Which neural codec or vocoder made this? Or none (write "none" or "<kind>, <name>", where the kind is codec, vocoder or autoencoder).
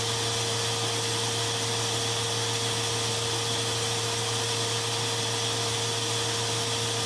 none